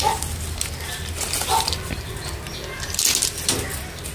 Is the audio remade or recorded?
recorded